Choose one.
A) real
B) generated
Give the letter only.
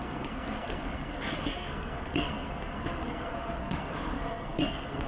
B